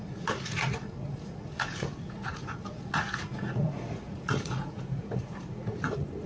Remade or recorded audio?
remade